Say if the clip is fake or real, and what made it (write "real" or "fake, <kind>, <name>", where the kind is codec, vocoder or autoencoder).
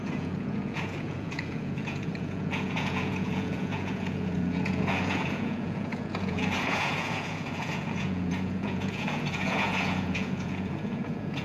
fake, vocoder, Vocos